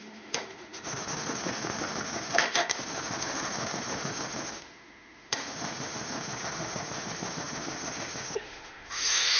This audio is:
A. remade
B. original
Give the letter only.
A